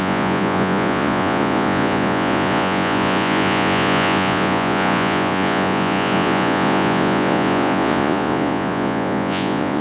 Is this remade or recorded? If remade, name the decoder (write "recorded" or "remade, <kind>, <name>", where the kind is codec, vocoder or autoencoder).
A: remade, vocoder, Vocos